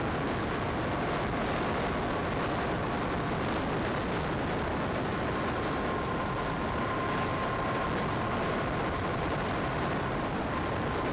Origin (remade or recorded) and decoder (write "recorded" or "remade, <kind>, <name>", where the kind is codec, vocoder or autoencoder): recorded